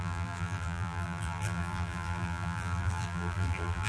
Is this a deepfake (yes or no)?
yes